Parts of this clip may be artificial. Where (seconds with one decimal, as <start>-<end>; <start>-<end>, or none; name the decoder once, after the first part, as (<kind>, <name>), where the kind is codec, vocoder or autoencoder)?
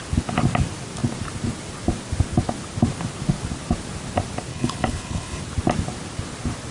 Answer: 4.5-5.4 (codec, HILCodec)